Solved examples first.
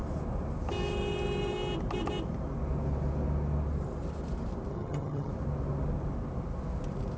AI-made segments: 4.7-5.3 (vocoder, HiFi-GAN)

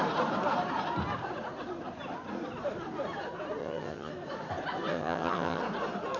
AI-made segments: 3.6-4.1 (vocoder, HiFi-GAN); 4.9-5.6

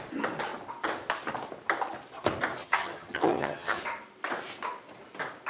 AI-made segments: 2.6-3.8 (vocoder, HiFi-GAN)

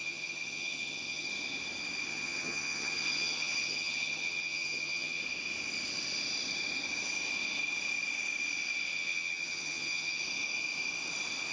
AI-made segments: 0.0-1.3 (vocoder, HiFi-GAN); 2.1-5.2; 8.9-10.2

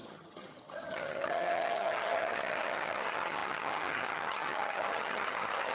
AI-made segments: 0.0-5.7 (vocoder, HiFi-GAN)

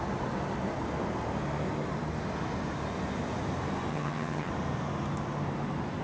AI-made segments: 3.9-4.5 (vocoder, HiFi-GAN)

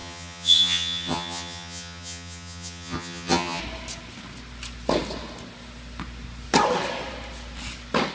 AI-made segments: 0.0-3.6 (vocoder, HiFi-GAN)

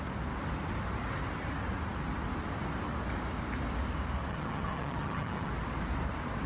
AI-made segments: 4.3-5.5 (vocoder, HiFi-GAN)